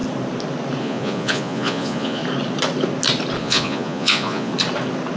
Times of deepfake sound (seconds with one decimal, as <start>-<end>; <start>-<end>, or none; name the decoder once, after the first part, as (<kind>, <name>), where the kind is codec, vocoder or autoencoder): 0.8-2.2 (vocoder, Vocos); 3.4-4.5